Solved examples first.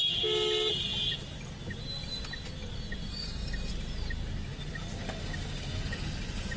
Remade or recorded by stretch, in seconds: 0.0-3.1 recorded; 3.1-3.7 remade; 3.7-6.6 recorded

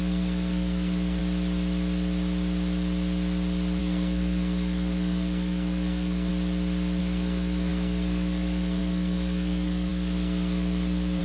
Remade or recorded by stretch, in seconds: 0.0-1.2 remade; 1.2-3.8 recorded; 3.8-6.3 remade; 6.3-7.0 recorded; 7.0-11.2 remade